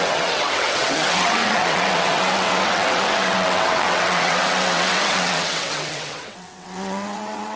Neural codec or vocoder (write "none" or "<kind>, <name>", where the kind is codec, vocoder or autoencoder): vocoder, WaveNeXt